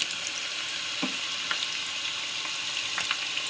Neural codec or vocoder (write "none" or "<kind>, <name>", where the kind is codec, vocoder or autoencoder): none